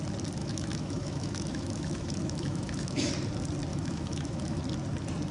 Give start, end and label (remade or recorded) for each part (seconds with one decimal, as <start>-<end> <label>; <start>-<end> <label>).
0.0-0.4 recorded; 0.4-3.1 remade; 3.1-3.7 recorded; 3.7-4.6 remade; 4.6-5.3 recorded